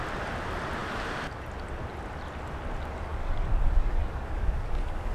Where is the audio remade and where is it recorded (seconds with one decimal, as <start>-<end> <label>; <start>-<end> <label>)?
0.0-3.1 recorded; 3.1-5.1 remade